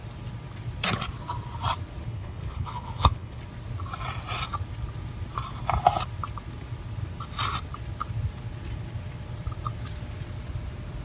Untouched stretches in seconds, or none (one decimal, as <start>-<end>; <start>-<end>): 0.0-2.0; 3.4-11.0